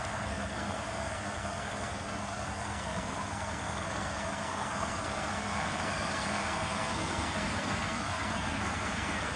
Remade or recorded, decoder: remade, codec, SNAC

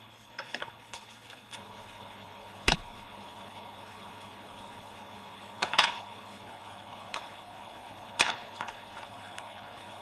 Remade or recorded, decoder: remade, codec, HILCodec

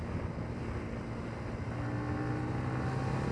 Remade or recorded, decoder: recorded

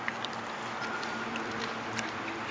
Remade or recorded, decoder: recorded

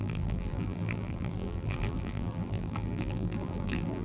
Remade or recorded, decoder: remade, vocoder, BigVGAN v2